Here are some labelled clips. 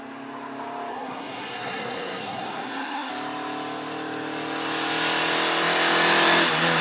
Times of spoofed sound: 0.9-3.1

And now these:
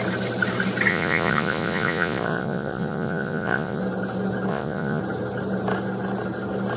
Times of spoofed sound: 0.9-3.8; 4.5-5.0